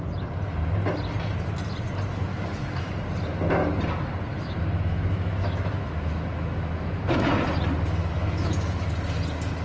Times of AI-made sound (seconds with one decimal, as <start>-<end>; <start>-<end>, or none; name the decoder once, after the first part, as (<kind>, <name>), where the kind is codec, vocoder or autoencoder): 2.3-2.9 (autoencoder, DAC-VAE); 4.3-7.3; 8.0-8.9